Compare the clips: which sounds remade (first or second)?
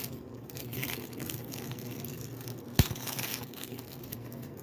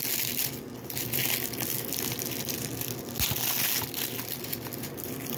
first